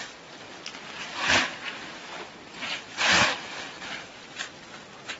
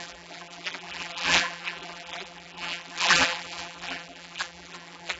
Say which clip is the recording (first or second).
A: first